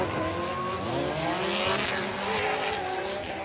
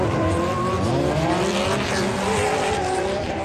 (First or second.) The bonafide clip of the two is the first